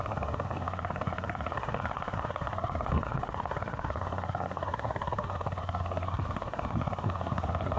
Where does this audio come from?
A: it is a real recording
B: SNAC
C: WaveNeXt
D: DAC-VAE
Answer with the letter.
B